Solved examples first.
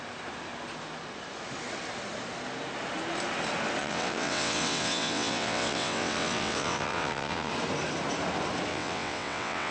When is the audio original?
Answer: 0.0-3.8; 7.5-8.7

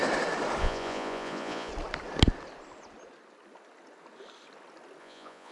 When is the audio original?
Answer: 0.0-0.6; 1.7-5.0

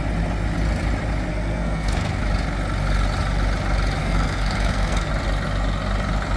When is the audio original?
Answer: 0.0-1.3; 2.2-4.0; 5.1-6.4

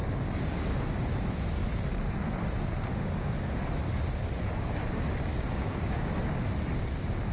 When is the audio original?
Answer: 0.8-2.9; 3.6-5.3; 6.2-7.3

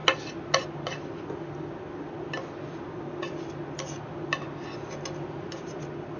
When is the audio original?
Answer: 0.0-6.2